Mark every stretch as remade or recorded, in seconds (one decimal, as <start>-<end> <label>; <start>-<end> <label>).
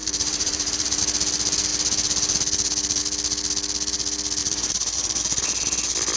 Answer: 0.0-1.0 remade; 1.0-4.4 recorded; 4.4-5.2 remade; 5.2-6.2 recorded